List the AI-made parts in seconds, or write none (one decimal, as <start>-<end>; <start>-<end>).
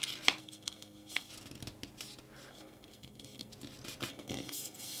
0.4-1.3; 2.5-3.5; 4.1-5.0